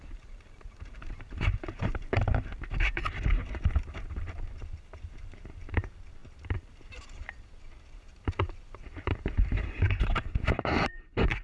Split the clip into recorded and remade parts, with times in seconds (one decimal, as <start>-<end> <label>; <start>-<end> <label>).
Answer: 0.0-11.4 remade